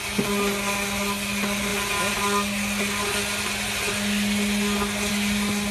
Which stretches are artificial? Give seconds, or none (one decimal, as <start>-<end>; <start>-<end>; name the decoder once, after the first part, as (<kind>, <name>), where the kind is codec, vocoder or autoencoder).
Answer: none